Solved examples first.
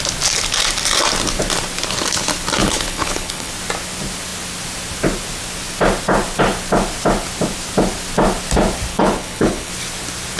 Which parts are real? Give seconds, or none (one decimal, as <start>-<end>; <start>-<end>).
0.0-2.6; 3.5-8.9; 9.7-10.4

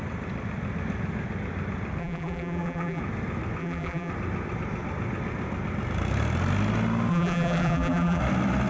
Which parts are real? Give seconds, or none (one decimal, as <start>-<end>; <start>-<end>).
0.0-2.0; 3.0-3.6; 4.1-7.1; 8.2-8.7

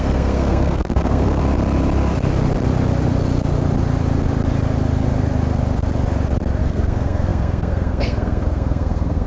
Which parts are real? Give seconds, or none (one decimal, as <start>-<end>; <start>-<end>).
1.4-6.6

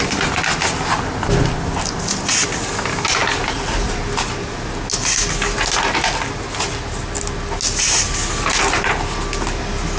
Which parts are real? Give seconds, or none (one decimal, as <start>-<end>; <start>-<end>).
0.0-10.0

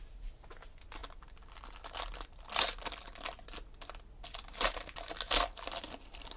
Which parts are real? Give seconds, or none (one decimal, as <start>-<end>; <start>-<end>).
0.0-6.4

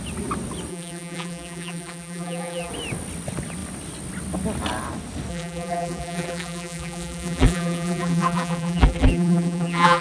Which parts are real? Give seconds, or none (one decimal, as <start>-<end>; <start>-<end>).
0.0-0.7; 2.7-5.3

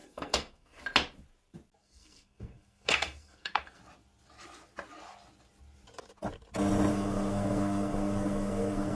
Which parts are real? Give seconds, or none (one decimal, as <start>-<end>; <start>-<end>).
0.8-1.8; 3.8-6.9